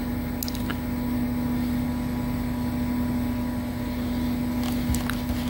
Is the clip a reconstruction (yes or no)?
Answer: no